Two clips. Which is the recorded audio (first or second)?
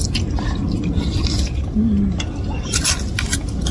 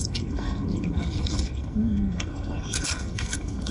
first